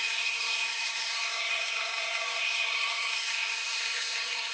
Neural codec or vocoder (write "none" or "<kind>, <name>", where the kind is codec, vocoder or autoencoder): codec, SNAC